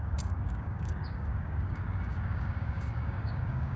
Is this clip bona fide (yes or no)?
no